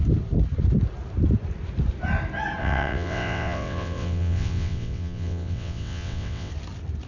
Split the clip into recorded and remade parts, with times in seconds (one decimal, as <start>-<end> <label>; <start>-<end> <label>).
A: 0.0-2.6 recorded; 2.6-6.5 remade; 6.5-7.1 recorded